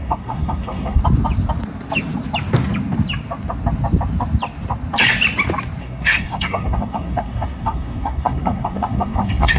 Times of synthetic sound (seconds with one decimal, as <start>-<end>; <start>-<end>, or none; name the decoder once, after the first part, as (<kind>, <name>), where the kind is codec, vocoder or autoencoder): 0.0-1.0 (codec, SNAC); 5.8-9.6